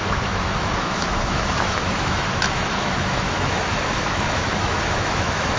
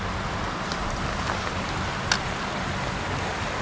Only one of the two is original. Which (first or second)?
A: second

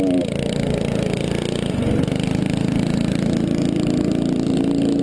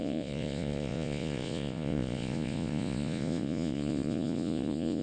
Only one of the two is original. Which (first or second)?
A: first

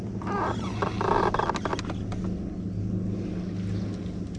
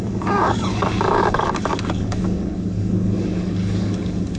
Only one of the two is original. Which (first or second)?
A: first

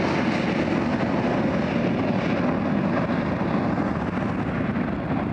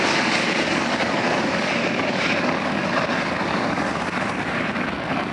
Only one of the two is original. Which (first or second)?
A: first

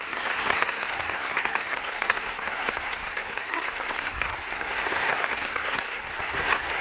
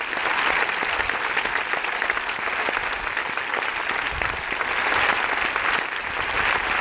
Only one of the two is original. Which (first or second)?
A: second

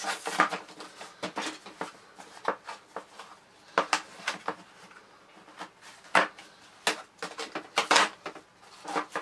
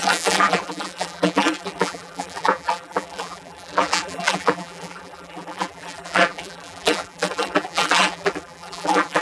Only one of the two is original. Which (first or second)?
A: first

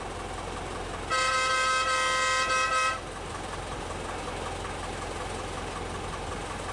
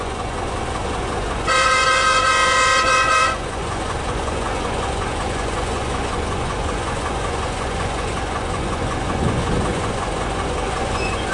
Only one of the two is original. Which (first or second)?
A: first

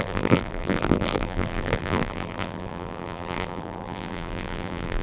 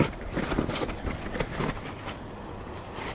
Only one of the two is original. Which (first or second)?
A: second